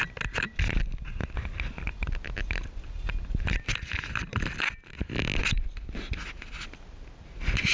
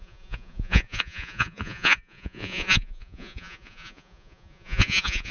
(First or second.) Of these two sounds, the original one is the first